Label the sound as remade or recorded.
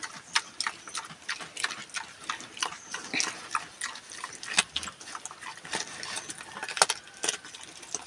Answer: recorded